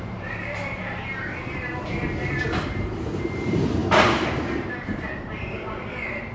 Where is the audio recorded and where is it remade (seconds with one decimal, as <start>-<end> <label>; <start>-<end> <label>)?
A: 0.0-6.3 remade